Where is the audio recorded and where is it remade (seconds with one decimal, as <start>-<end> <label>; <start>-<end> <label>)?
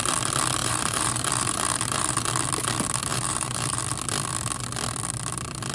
0.0-0.6 recorded; 0.6-2.2 remade; 2.2-3.1 recorded; 3.1-3.8 remade; 3.8-5.7 recorded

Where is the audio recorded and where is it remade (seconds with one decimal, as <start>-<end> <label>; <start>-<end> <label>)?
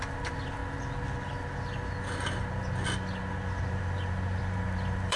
0.0-0.6 remade; 0.6-3.7 recorded; 3.7-5.2 remade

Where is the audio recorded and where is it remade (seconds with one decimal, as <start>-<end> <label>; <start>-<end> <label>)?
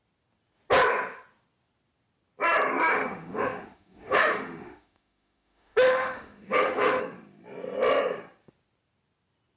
0.0-2.9 recorded; 2.9-7.0 remade; 7.0-9.6 recorded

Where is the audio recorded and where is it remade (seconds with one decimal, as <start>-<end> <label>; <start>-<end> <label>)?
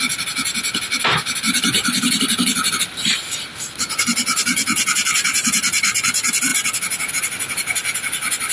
0.0-8.5 recorded